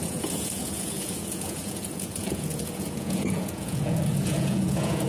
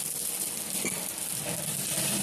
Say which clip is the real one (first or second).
second